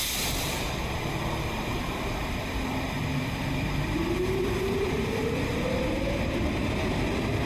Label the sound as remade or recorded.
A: remade